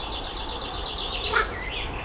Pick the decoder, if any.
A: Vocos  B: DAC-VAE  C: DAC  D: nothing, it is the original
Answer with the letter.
D